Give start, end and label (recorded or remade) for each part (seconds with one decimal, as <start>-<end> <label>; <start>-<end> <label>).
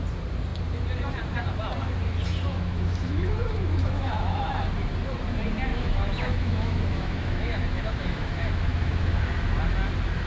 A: 0.0-2.5 recorded; 2.5-4.5 remade; 4.5-5.7 recorded; 5.7-9.2 remade; 9.2-10.3 recorded